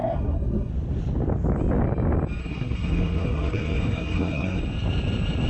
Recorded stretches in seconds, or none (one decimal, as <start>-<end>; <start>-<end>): 0.7-2.4; 4.6-5.5